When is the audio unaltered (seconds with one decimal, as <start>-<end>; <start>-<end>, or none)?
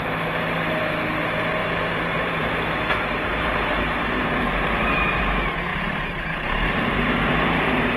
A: 0.0-1.6; 5.2-5.7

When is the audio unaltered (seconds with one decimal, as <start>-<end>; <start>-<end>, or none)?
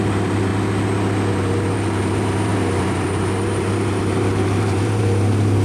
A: 0.5-1.3